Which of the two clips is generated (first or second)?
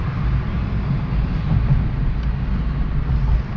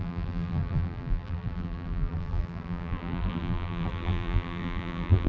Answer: second